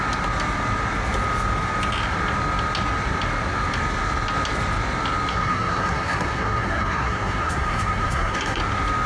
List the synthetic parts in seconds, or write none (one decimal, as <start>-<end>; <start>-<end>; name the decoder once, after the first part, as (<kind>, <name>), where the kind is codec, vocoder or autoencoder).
5.3-8.6 (codec, SNAC)